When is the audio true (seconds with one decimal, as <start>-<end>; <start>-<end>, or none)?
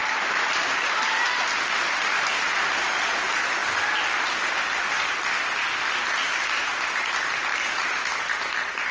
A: 0.0-8.9